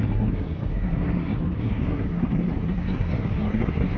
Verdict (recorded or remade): remade